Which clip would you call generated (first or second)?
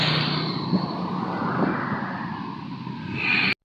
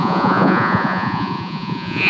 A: second